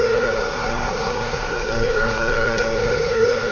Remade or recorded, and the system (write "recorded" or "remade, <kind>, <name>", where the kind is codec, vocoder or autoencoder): remade, codec, SNAC